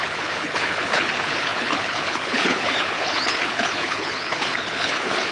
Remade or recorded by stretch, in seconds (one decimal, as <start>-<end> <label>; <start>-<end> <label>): 0.0-5.3 remade